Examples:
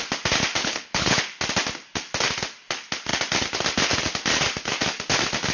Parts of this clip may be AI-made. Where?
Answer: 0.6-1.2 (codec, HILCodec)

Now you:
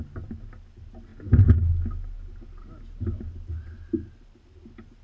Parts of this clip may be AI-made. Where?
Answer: none

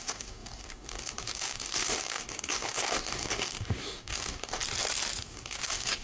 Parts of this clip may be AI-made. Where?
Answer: 0.0-4.6 (codec, DAC); 5.2-6.0

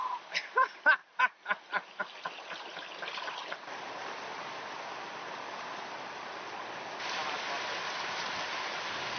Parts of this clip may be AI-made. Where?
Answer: none

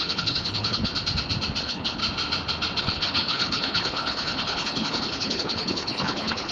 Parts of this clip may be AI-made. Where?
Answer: 0.0-0.9 (codec, HILCodec); 1.6-2.0; 2.8-6.5

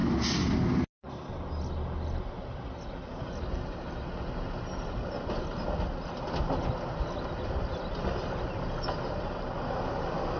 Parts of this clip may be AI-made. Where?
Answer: none

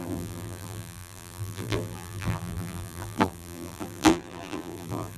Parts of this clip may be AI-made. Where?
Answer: 0.0-5.2 (vocoder, BigVGAN v2)